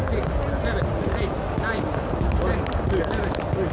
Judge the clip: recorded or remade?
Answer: recorded